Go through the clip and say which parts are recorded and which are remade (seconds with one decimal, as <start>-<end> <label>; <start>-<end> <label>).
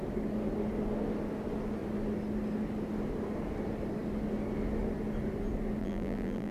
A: 0.0-5.8 recorded; 5.8-6.5 remade